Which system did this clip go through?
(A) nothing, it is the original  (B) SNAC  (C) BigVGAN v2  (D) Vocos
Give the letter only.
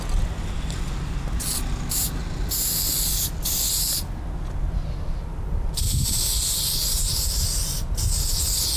A